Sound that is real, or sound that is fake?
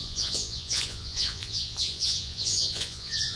fake